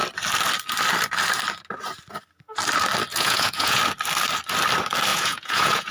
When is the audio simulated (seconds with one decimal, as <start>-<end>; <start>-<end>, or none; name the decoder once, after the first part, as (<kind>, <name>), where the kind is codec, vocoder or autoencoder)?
3.1-3.8 (vocoder, Vocos); 5.1-5.9